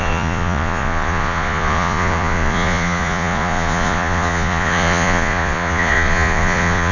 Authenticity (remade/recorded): remade